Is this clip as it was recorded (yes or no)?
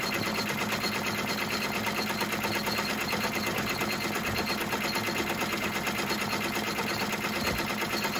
yes